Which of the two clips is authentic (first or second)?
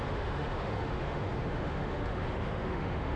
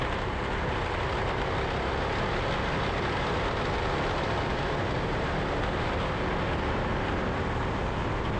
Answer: second